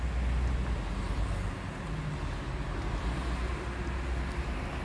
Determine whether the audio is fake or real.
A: real